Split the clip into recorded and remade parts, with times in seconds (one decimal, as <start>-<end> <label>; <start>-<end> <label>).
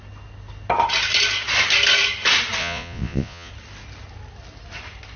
0.0-2.6 recorded; 2.6-3.5 remade; 3.5-5.2 recorded